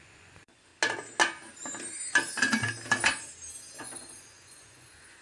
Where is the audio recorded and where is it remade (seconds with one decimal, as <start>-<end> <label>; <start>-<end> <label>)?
0.0-0.7 remade; 0.7-3.8 recorded; 3.8-5.2 remade